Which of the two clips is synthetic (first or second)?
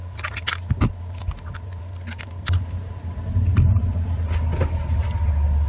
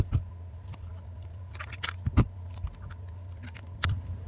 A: second